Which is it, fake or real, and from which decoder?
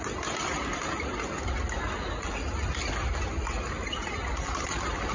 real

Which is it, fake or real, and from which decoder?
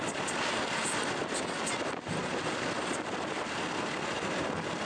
real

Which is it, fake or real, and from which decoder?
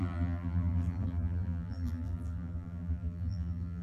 fake, vocoder, BigVGAN v2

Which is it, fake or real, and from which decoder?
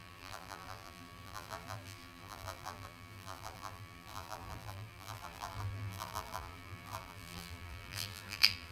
fake, vocoder, BigVGAN v2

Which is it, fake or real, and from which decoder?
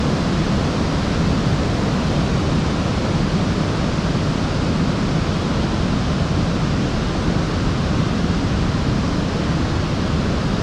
real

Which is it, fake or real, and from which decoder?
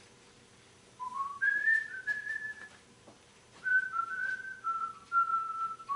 fake, vocoder, BigVGAN v2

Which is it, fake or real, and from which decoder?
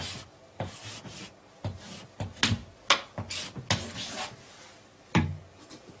real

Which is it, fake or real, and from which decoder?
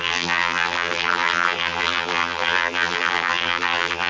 fake, vocoder, BigVGAN v2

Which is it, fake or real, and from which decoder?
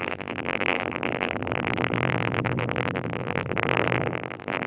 fake, vocoder, BigVGAN v2